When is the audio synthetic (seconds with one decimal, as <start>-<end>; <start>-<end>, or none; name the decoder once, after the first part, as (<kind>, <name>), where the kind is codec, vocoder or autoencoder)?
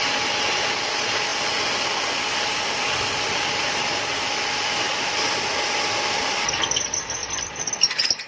none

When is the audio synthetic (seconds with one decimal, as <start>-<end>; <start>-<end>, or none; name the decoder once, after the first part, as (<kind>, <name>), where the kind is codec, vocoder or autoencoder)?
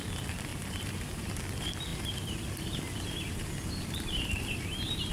0.5-1.3 (vocoder, BigVGAN v2); 1.9-5.1